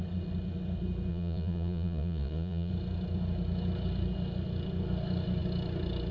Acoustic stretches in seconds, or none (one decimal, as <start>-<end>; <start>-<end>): 0.0-1.1; 2.7-6.1

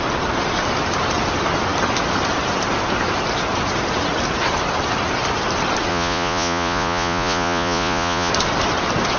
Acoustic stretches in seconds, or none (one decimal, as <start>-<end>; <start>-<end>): 0.0-5.9; 8.3-9.2